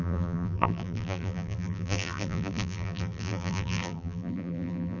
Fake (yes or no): yes